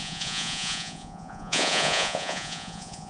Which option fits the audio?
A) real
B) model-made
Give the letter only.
B